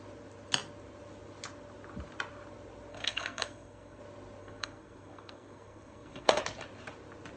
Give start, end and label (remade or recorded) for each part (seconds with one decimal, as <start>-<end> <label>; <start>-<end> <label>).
0.0-2.9 recorded; 2.9-4.0 remade; 4.0-4.4 recorded; 4.4-6.4 remade; 6.4-7.4 recorded